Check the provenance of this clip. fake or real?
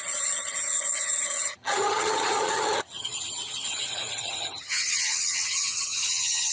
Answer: fake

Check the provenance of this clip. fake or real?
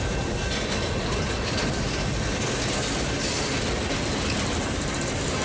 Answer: real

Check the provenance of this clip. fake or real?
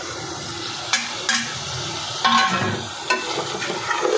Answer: real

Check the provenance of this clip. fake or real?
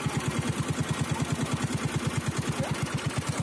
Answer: real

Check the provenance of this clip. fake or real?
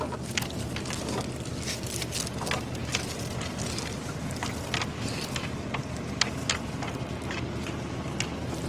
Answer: real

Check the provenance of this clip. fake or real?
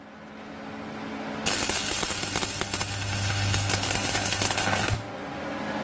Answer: real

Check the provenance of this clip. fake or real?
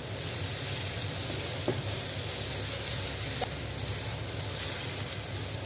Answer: real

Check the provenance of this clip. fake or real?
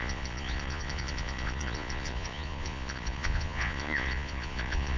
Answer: fake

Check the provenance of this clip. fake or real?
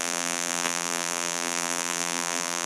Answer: fake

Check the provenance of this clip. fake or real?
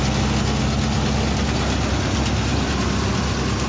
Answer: real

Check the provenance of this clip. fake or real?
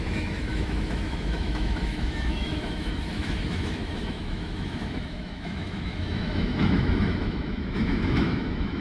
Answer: fake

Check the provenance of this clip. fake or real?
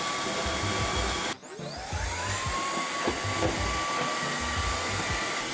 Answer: real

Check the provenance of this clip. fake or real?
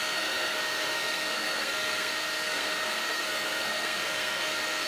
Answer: fake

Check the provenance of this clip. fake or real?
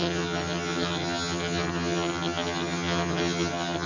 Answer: fake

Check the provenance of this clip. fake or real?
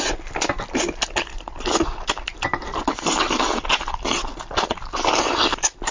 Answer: real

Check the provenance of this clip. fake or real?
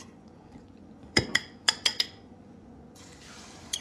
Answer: fake